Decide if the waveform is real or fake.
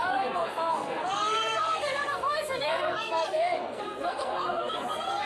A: fake